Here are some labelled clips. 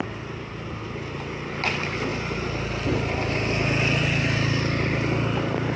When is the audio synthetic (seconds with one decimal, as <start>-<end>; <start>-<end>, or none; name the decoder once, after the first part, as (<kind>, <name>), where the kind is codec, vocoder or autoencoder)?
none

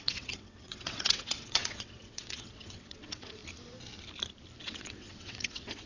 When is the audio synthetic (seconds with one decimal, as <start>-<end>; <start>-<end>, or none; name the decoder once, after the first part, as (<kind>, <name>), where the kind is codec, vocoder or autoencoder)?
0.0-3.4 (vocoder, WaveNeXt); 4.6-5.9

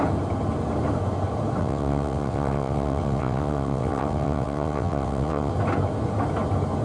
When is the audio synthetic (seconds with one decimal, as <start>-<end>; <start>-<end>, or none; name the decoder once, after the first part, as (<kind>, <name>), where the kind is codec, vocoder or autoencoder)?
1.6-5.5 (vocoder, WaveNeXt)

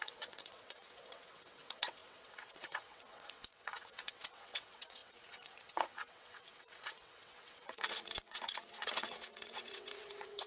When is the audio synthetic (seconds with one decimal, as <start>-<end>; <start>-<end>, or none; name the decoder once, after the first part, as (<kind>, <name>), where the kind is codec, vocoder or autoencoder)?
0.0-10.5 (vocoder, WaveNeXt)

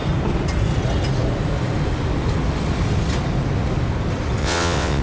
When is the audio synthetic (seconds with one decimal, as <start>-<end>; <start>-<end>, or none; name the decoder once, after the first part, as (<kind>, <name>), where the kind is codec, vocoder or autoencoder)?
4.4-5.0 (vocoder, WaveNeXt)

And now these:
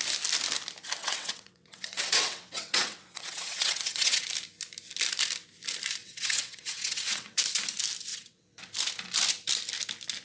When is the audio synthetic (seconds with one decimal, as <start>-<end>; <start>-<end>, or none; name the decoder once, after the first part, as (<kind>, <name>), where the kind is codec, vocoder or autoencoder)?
1.0-4.2 (vocoder, WaveNeXt); 6.0-7.4; 8.1-8.6

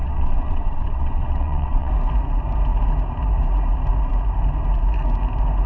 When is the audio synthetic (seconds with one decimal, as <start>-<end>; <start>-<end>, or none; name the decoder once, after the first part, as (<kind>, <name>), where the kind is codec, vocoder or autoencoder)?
0.0-1.9 (vocoder, WaveNeXt)